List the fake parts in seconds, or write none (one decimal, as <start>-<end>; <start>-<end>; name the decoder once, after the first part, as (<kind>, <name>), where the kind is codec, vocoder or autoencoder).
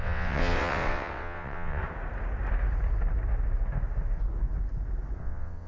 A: 0.0-1.8 (vocoder, WaveNeXt); 5.2-5.7